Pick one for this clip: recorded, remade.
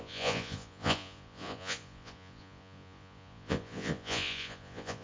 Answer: remade